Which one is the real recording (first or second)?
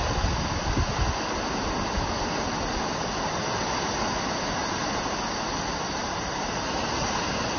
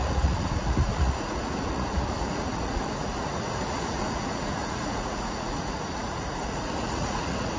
first